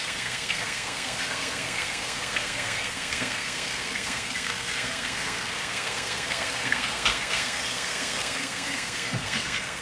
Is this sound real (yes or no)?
no